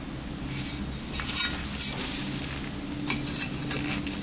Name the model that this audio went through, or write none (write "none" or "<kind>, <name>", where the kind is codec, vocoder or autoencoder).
none